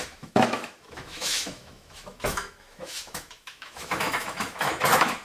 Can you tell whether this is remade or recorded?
remade